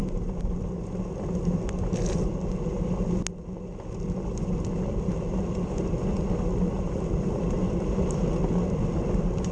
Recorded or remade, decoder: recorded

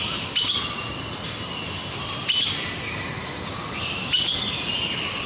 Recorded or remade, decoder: recorded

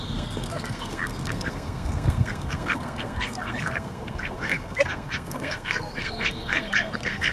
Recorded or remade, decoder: remade, codec, SNAC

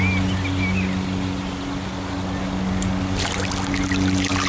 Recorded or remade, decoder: recorded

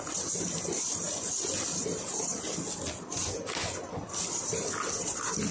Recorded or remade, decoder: recorded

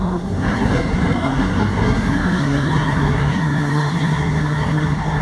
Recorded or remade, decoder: remade, codec, SNAC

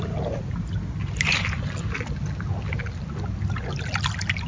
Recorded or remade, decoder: recorded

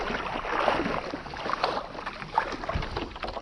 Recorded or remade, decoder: recorded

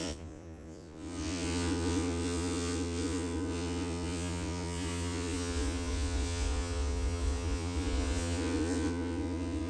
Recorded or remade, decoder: remade, vocoder, Vocos